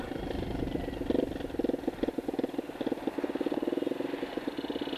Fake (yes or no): no